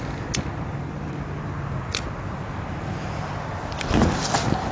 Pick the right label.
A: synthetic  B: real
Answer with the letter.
B